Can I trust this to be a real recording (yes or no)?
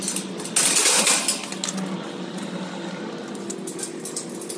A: yes